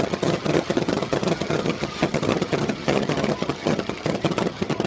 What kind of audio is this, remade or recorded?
remade